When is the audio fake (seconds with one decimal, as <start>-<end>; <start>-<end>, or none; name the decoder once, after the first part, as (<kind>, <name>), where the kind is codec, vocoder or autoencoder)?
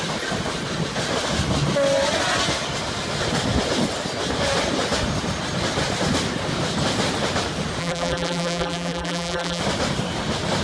7.8-9.6 (vocoder, BigVGAN v2)